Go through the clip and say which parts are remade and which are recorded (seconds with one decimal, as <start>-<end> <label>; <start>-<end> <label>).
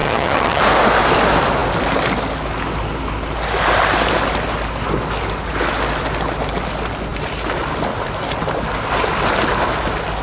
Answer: 0.0-0.6 remade; 0.6-10.2 recorded